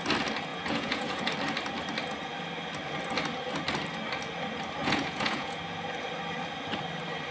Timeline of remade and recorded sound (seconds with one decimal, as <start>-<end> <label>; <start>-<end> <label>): 0.0-0.5 recorded; 0.5-1.3 remade; 1.3-4.8 recorded; 4.8-5.6 remade; 5.6-7.3 recorded